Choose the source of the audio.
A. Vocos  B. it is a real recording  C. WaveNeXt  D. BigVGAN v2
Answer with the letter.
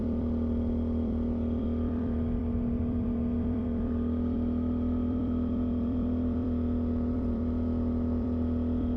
D